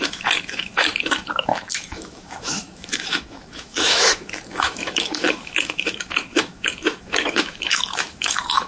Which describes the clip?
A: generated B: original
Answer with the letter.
A